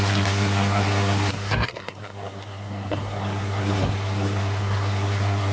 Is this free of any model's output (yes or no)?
no